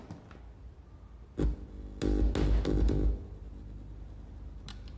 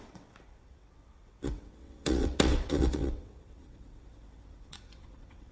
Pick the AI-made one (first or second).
second